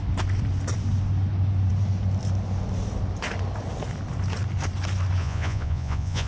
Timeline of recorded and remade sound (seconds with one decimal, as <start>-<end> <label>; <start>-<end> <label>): 0.0-5.2 recorded; 5.2-6.3 remade